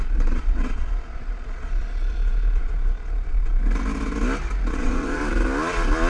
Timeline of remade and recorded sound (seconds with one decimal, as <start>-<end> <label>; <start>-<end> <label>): 0.0-3.6 remade; 3.6-4.7 recorded; 4.7-5.2 remade; 5.2-6.1 recorded